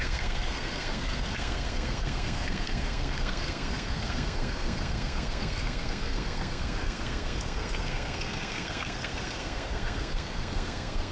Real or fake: fake